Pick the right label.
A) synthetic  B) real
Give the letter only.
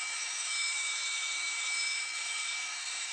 A